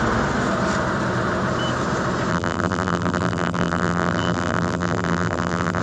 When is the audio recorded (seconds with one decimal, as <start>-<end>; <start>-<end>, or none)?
0.0-2.3